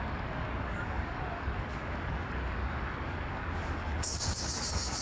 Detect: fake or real fake